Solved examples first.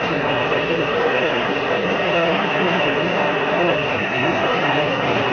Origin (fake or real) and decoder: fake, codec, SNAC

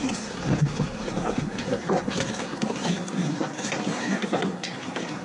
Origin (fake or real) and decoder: fake, codec, SNAC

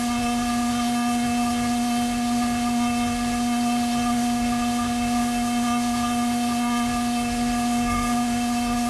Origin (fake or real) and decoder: fake, codec, SNAC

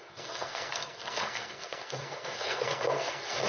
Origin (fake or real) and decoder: fake, codec, SNAC